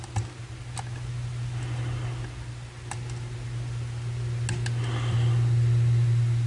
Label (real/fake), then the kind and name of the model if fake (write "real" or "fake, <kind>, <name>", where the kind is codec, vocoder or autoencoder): real